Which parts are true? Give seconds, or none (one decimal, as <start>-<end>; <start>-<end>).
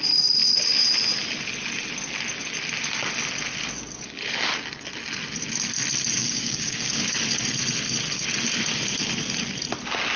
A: 0.0-6.2; 7.2-10.2